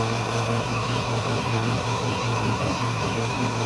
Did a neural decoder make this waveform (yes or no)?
yes